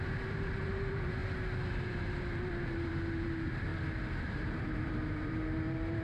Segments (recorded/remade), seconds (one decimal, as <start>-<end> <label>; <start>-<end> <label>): 0.0-1.2 remade; 1.2-1.7 recorded; 1.7-3.7 remade; 3.7-4.3 recorded; 4.3-6.0 remade